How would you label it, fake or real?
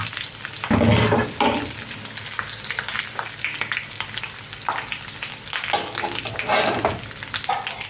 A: real